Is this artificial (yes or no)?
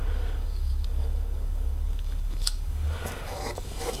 yes